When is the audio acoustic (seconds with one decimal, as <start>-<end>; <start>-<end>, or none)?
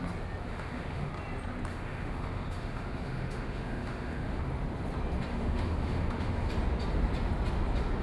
0.0-0.5; 1.1-1.7; 4.4-5.3; 6.5-8.0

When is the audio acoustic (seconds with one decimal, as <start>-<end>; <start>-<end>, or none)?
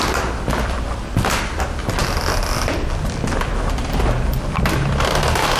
0.0-5.6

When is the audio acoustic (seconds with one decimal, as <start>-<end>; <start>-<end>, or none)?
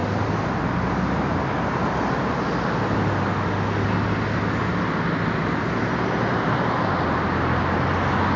0.0-8.4